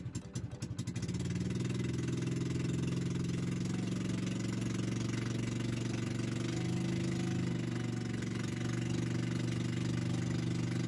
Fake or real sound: real